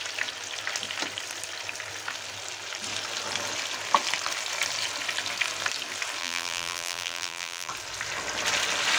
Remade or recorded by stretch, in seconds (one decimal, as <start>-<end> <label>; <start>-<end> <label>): 0.0-6.2 recorded; 6.2-7.7 remade; 7.7-9.0 recorded